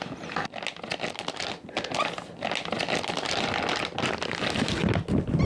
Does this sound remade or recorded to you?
recorded